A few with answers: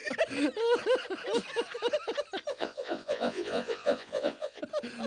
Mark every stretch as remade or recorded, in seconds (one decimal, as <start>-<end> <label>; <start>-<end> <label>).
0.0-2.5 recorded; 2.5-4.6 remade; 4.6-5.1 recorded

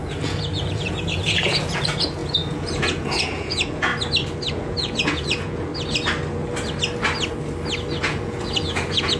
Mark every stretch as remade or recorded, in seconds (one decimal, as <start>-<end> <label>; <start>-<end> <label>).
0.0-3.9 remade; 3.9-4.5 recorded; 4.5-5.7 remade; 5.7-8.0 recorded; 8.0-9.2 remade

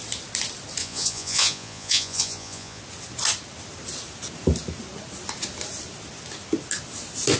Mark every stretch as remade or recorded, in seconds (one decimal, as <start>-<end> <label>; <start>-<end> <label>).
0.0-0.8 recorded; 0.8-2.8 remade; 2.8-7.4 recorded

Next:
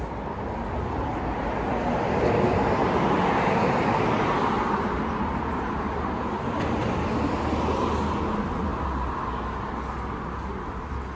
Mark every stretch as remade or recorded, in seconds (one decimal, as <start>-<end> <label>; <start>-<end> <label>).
0.0-11.2 recorded

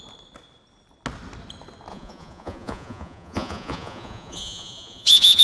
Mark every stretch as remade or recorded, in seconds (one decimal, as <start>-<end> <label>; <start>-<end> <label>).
0.0-1.9 recorded; 1.9-5.4 remade